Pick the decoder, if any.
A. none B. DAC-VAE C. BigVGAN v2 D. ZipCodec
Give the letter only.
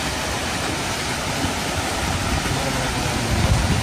C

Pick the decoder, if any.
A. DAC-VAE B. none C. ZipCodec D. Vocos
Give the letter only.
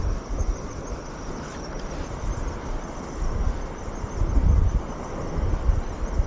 B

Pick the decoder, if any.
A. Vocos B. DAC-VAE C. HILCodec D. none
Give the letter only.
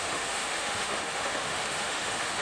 B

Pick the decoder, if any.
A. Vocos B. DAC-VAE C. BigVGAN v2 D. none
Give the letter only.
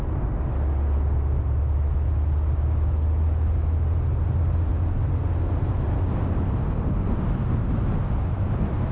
D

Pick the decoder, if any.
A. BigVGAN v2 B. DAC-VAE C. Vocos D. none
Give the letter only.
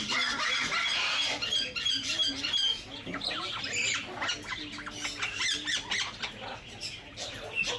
D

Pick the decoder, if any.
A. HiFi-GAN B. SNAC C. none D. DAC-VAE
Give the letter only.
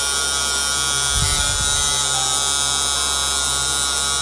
C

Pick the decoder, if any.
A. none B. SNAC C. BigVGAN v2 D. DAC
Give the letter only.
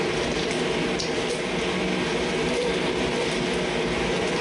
A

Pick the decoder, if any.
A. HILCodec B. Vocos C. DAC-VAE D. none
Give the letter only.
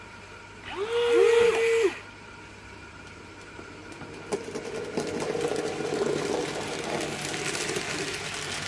D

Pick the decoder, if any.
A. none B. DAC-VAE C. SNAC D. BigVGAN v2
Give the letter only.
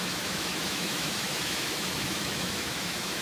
B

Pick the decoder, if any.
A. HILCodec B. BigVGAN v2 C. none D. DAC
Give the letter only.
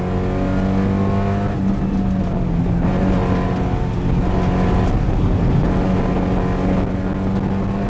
C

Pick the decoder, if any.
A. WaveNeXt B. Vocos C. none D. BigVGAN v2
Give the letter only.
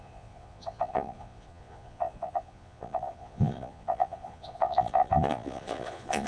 B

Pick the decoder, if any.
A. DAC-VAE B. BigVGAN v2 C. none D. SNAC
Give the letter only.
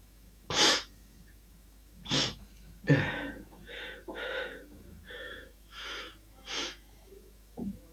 A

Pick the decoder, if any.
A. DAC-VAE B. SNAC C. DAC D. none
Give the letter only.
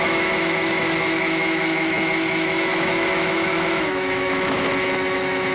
A